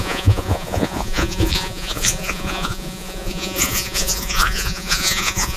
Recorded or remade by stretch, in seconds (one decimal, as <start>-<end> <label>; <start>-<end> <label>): 0.0-5.6 remade